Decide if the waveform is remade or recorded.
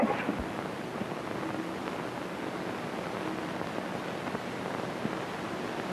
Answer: recorded